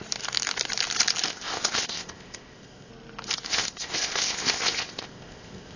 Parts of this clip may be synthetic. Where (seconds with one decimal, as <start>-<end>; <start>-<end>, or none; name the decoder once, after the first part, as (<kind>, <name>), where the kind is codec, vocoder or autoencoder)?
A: 1.3-2.9 (codec, ZipCodec); 3.5-5.8